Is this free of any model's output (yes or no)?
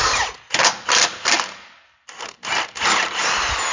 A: yes